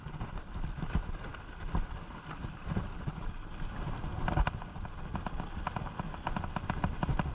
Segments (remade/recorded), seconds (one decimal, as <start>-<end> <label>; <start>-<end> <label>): 0.0-1.3 recorded; 1.3-4.3 remade; 4.3-7.3 recorded